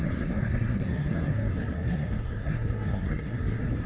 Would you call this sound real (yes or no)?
no